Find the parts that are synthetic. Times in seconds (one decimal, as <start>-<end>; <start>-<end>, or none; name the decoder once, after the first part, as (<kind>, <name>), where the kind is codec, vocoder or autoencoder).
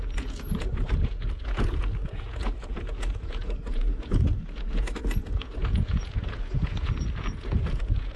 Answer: 0.0-8.2 (vocoder, Vocos)